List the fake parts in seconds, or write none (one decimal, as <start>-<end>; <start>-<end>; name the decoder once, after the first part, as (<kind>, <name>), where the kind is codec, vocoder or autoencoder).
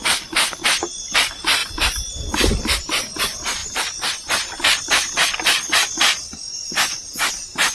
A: none